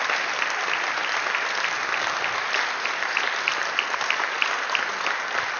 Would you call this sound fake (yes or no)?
no